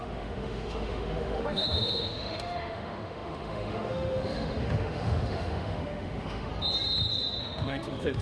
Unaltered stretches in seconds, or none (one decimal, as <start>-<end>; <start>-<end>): 6.5-7.4